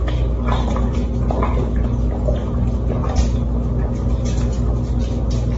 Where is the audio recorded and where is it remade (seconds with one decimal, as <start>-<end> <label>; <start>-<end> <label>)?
0.0-5.6 recorded